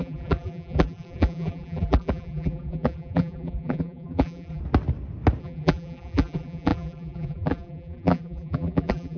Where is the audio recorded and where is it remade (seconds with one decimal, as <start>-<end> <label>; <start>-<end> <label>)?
0.0-4.6 remade; 4.6-5.4 recorded; 5.4-9.2 remade